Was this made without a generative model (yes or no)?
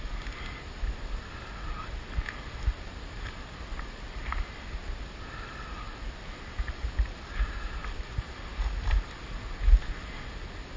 yes